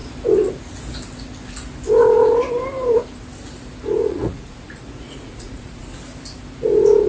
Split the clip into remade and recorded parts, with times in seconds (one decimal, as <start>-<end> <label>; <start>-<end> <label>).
0.0-4.0 recorded; 4.0-5.8 remade; 5.8-7.1 recorded